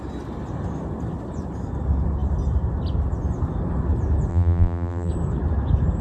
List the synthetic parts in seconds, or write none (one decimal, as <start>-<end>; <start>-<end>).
4.3-5.1